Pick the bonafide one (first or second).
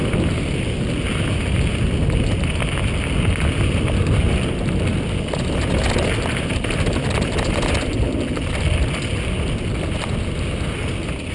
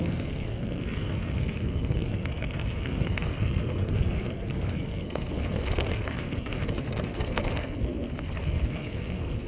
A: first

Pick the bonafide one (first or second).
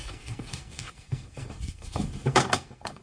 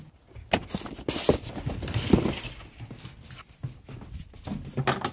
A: second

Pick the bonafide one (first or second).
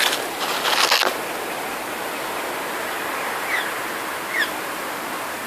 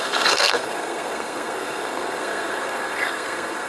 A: first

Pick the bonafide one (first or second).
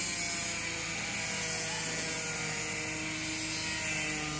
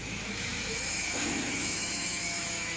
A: first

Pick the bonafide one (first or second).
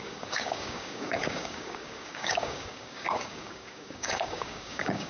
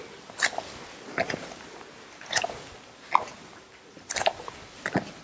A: second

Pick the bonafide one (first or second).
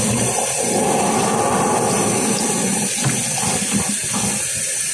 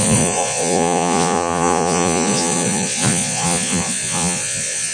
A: first